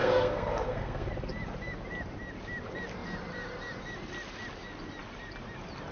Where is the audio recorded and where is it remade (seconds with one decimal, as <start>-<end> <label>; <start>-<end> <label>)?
0.0-1.1 remade; 1.1-5.9 recorded